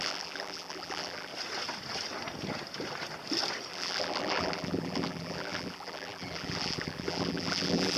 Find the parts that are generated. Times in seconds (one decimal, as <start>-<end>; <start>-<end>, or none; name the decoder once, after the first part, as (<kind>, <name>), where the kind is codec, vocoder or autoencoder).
0.0-1.3 (vocoder, BigVGAN v2); 3.7-8.0